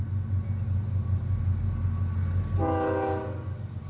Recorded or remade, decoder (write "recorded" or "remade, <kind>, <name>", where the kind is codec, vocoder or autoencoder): recorded